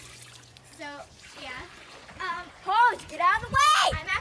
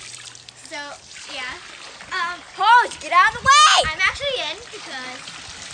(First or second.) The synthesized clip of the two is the first